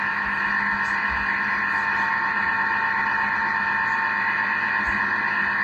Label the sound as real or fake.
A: real